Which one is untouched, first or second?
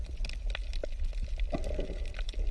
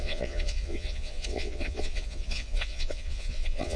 first